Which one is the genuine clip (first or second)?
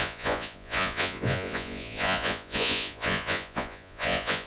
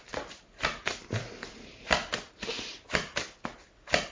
second